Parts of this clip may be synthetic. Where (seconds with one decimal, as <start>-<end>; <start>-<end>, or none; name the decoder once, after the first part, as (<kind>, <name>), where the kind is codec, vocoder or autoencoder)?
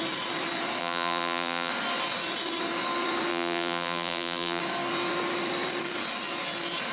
0.8-1.7 (vocoder, BigVGAN v2); 3.3-4.6